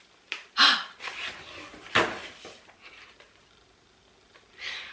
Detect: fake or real real